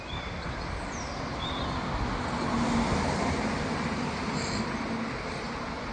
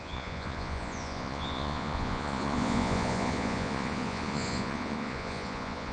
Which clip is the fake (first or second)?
second